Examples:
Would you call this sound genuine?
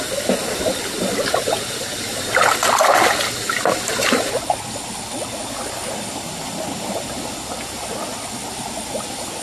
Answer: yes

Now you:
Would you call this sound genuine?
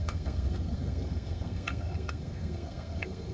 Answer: no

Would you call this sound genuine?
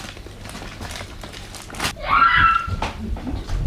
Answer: yes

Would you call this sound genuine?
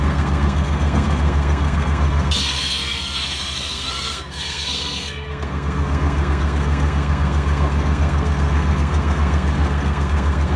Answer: no